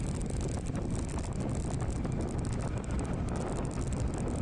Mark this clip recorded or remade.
recorded